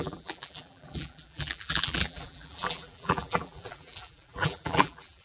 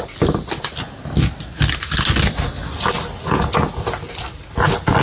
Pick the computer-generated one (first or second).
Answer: first